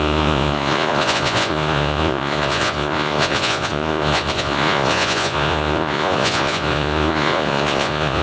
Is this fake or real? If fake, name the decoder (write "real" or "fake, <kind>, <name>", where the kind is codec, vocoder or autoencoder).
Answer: fake, vocoder, Vocos